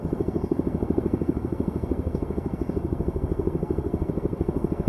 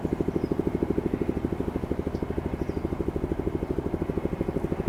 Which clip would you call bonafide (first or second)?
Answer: second